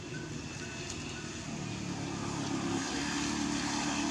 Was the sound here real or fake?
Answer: real